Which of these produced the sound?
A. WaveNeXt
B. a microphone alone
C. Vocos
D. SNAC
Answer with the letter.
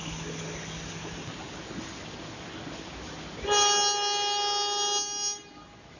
B